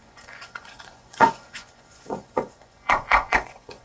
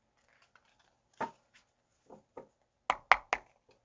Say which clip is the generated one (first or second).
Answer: first